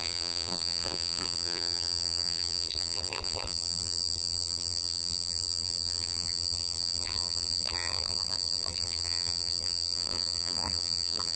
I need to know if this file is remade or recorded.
remade